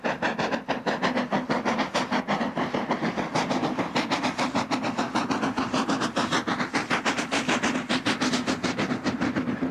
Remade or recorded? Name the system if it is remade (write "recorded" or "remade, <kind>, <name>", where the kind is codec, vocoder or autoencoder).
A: recorded